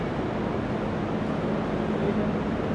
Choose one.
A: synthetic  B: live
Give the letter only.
B